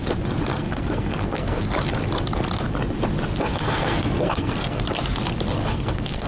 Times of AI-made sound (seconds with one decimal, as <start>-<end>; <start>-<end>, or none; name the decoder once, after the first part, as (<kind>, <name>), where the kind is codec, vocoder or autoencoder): 0.5-1.6 (codec, SNAC); 3.5-4.8; 5.6-6.3